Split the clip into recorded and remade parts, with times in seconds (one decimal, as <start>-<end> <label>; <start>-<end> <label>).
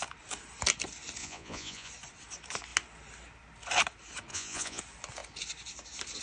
0.0-1.2 recorded; 1.2-1.9 remade; 1.9-4.3 recorded; 4.3-4.8 remade; 4.8-6.2 recorded